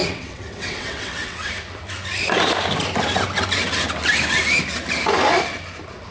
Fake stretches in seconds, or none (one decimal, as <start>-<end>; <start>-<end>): 0.0-1.5